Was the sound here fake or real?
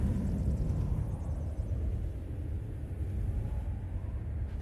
real